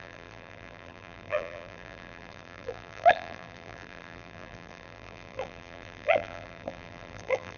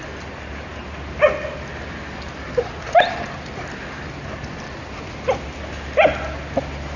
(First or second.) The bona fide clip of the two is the second